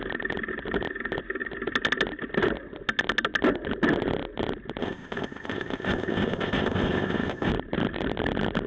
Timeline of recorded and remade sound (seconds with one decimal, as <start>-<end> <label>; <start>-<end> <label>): 0.0-4.8 recorded; 4.8-7.5 remade; 7.5-8.7 recorded

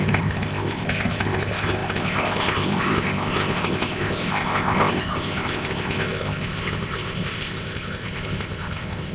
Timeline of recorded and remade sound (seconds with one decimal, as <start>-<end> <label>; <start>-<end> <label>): 0.0-9.1 remade